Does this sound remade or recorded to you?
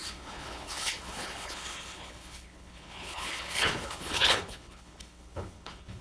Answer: remade